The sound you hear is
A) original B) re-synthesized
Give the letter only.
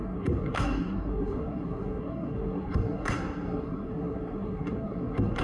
B